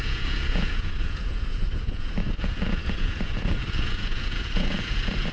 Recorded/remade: remade